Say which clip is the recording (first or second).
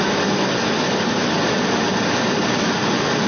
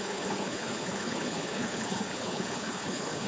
first